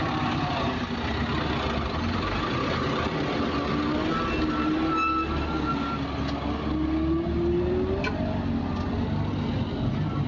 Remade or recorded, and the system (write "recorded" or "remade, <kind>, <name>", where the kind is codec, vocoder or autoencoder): recorded